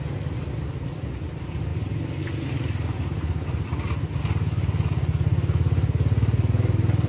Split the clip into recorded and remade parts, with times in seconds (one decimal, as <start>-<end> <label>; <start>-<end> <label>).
0.0-7.1 recorded